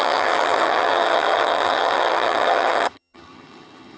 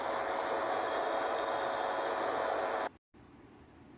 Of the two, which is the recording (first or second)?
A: second